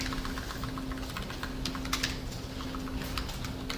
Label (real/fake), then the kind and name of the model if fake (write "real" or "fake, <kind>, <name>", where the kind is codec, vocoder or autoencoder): real